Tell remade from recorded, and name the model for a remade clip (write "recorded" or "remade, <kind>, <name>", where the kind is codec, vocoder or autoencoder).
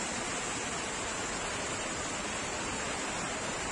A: recorded